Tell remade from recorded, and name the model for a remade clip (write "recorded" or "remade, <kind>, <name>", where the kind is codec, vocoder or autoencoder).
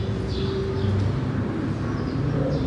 recorded